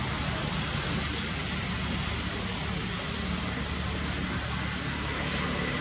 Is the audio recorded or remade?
recorded